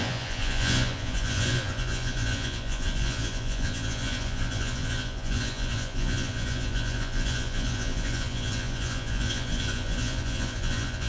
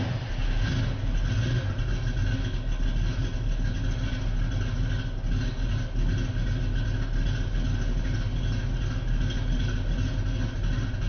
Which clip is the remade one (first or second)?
first